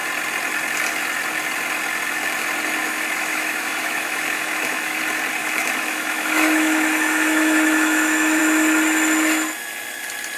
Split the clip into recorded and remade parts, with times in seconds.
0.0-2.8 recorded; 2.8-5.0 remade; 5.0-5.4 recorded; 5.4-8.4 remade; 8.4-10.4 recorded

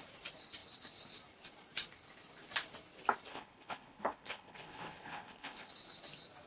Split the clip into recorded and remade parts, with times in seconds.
0.0-3.3 recorded; 3.3-5.7 remade; 5.7-6.5 recorded

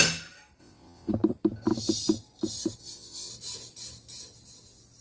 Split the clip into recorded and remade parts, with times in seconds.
0.0-0.6 recorded; 0.6-1.1 remade; 1.1-2.8 recorded; 2.8-3.3 remade; 3.3-5.0 recorded

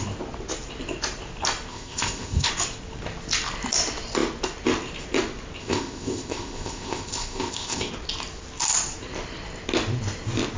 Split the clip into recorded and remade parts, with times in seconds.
0.0-1.7 recorded; 1.7-2.5 remade; 2.5-5.6 recorded; 5.6-7.9 remade; 7.9-10.6 recorded

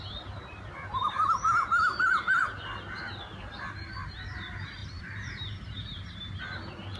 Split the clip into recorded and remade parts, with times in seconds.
0.0-1.9 recorded; 1.9-2.4 remade; 2.4-4.8 recorded; 4.8-6.4 remade; 6.4-7.0 recorded

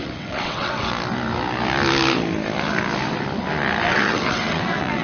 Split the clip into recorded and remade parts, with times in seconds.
0.0-0.9 remade; 0.9-3.9 recorded; 3.9-5.0 remade